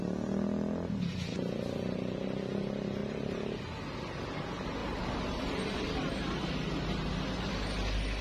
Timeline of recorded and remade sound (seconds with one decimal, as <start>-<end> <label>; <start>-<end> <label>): 0.0-3.0 recorded; 3.0-3.6 remade; 3.6-4.8 recorded; 4.8-7.5 remade; 7.5-8.2 recorded